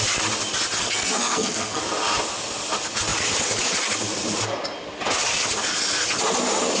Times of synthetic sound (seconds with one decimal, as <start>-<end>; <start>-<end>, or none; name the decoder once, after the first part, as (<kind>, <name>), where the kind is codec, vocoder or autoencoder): 0.8-1.8 (codec, SNAC)